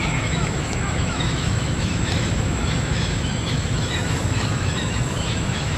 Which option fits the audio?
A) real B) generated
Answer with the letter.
B